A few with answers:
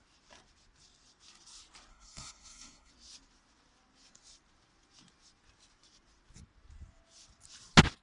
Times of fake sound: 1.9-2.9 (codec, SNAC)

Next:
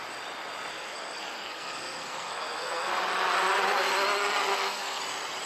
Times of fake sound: 0.7-3.0 (codec, SNAC); 4.5-5.0

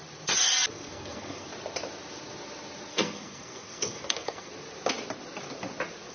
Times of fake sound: 0.7-1.5 (codec, SNAC); 2.9-4.5

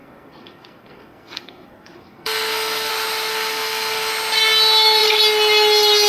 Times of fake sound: 0.0-2.9 (codec, SNAC); 3.3-4.1

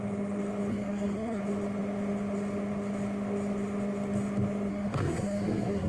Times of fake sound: 0.7-1.4 (codec, SNAC); 4.7-5.9

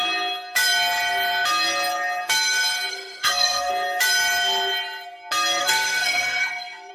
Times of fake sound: 2.9-3.7 (codec, SNAC); 5.6-6.9

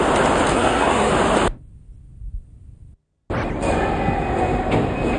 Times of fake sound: 0.5-1.1 (codec, SNAC)